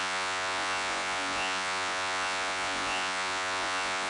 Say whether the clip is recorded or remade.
remade